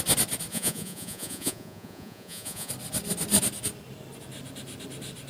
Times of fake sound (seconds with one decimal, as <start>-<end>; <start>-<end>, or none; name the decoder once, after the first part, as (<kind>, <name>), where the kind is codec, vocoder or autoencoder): 0.5-2.7 (vocoder, Vocos)